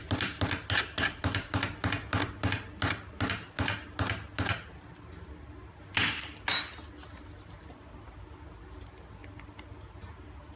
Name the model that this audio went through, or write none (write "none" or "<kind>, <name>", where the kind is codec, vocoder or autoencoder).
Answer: none